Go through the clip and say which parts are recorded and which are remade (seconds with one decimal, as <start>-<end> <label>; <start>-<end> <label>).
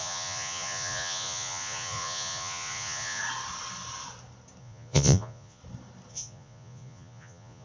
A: 0.0-3.2 remade; 3.2-4.6 recorded; 4.6-5.6 remade; 5.6-6.1 recorded; 6.1-7.6 remade